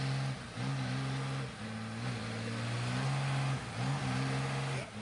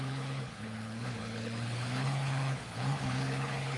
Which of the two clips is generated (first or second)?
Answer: second